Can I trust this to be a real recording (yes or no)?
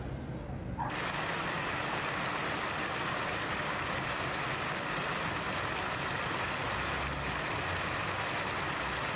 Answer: yes